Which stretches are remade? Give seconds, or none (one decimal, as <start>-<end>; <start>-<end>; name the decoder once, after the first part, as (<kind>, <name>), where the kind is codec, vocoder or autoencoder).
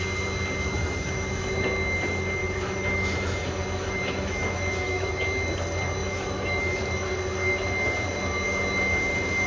0.8-1.5 (autoencoder, DAC-VAE); 2.4-5.1; 6.0-6.8